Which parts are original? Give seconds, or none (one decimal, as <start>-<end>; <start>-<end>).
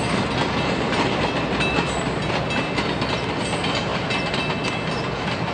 0.0-5.5